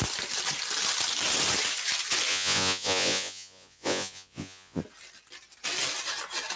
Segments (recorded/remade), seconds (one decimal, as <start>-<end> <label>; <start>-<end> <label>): 0.0-2.3 recorded; 2.3-4.8 remade; 4.8-6.6 recorded